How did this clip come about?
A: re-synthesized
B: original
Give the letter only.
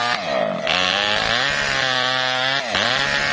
B